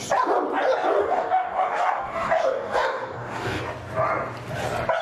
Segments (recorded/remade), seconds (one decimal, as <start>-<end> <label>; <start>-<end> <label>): 0.0-1.0 recorded; 1.0-3.6 remade; 3.6-5.0 recorded